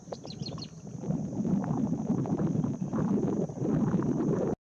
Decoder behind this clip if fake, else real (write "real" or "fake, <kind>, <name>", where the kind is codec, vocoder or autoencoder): real